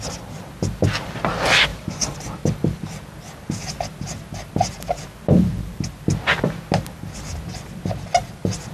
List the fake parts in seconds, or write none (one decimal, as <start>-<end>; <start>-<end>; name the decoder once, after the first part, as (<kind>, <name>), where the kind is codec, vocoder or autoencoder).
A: 1.7-3.0 (vocoder, BigVGAN v2)